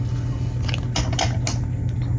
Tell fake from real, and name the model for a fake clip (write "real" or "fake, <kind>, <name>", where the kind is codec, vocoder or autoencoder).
real